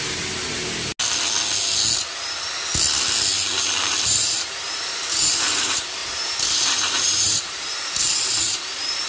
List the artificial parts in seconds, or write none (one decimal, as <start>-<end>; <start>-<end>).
0.0-0.9; 3.8-9.1

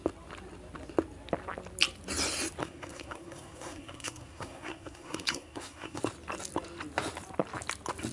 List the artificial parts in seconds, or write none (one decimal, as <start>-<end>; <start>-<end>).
2.6-6.0

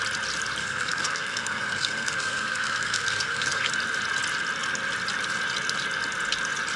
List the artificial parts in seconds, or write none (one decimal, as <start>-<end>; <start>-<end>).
0.6-3.7

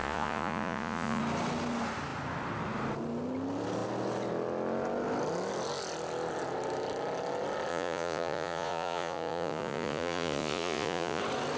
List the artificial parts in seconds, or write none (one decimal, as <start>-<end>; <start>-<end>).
0.0-1.2; 7.7-11.2

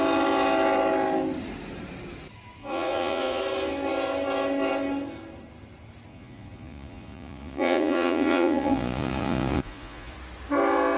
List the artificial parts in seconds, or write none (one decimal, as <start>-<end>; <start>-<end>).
2.6-3.4; 6.1-10.1

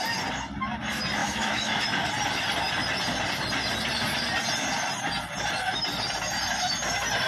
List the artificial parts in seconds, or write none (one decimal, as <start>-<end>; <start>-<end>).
1.2-1.8

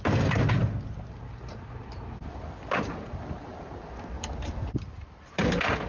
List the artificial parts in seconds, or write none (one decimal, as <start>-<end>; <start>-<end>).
3.4-3.9

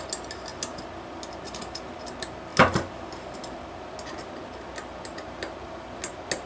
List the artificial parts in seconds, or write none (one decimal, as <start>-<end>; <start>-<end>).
none